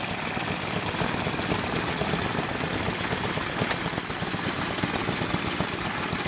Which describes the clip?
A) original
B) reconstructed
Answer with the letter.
A